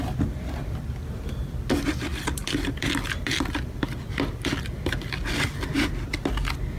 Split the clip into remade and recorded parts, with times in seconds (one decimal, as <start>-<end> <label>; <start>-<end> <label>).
0.0-0.6 recorded; 0.6-1.2 remade; 1.2-2.1 recorded; 2.1-5.3 remade; 5.3-6.8 recorded